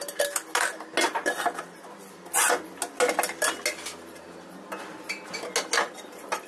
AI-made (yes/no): no